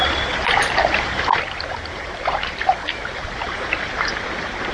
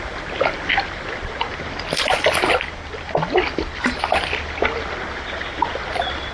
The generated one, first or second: first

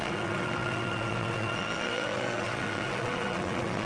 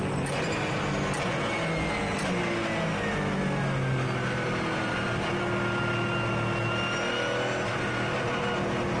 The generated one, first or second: first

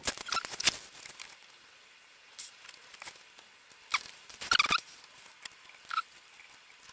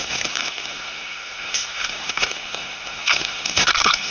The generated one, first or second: second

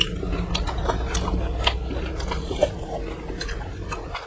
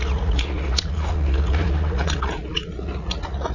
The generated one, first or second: second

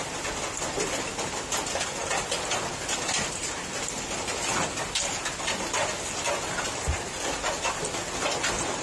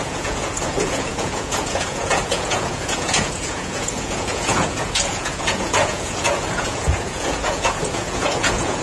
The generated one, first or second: second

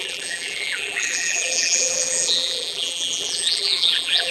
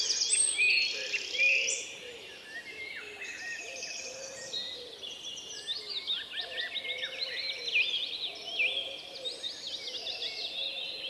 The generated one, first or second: first